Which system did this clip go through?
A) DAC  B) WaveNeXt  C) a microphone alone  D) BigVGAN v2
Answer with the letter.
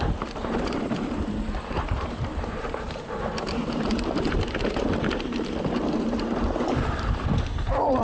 D